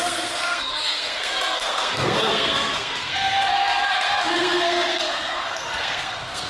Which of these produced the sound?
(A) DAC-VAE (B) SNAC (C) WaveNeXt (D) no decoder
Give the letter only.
B